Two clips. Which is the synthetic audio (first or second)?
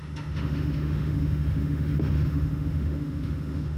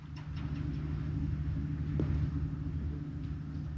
first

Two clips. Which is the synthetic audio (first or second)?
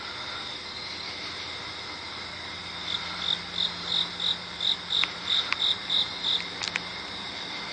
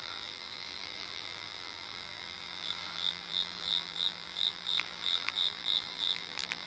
second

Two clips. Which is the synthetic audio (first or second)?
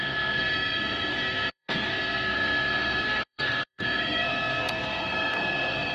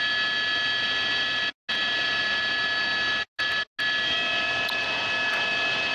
first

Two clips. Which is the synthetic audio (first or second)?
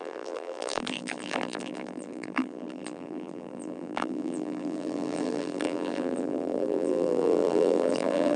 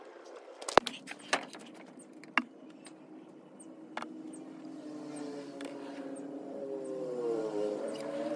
first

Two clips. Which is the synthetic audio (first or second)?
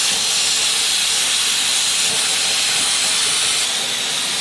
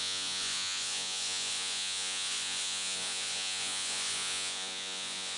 second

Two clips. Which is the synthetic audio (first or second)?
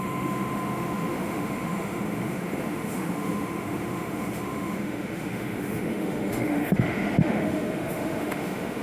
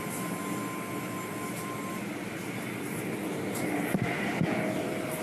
first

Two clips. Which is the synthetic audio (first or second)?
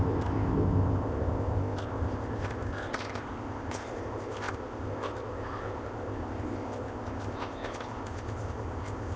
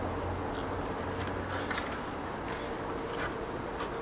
first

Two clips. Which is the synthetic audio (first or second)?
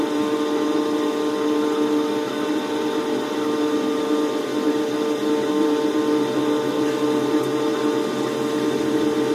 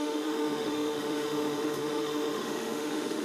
second